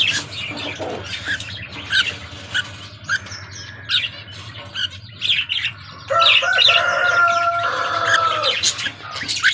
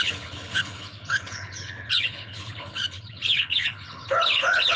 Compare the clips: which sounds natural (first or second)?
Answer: first